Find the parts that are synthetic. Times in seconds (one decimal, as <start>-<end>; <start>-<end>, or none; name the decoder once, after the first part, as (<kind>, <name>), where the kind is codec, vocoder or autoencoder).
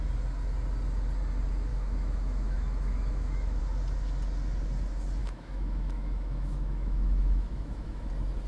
1.7-3.6 (autoencoder, DAC-VAE); 5.2-8.1